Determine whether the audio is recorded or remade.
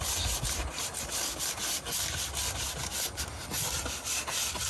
recorded